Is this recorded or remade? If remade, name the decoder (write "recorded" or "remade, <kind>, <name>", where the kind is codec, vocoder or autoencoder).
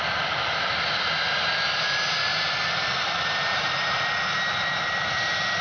recorded